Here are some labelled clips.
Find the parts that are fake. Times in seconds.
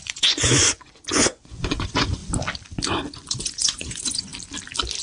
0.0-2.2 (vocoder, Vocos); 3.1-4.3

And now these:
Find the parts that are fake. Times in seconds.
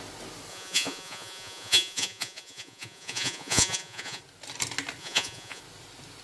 0.5-4.2 (vocoder, Vocos); 5.0-5.6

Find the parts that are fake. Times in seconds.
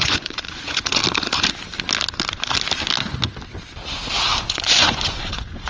0.0-1.0 (vocoder, Vocos); 4.4-5.7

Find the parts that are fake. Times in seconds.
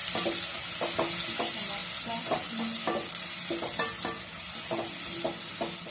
none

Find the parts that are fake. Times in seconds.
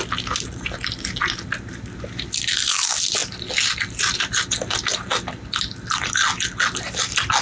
none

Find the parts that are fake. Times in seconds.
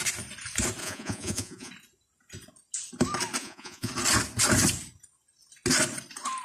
0.8-1.7 (vocoder, Vocos); 3.4-3.9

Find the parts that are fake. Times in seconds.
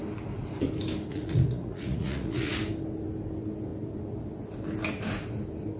1.1-2.5 (vocoder, Vocos)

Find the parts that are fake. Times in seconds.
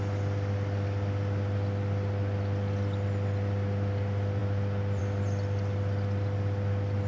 none